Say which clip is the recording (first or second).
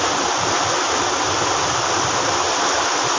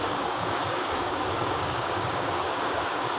first